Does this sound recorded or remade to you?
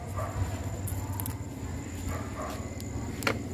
recorded